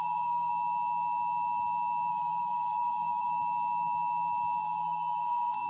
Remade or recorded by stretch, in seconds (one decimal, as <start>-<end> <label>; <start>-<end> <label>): 0.0-0.5 remade; 0.5-2.1 recorded; 2.1-3.3 remade; 3.3-4.6 recorded; 4.6-5.7 remade